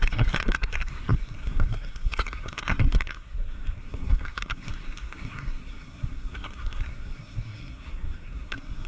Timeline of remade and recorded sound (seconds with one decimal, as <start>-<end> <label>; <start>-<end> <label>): 0.0-8.9 remade